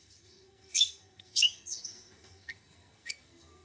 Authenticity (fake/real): fake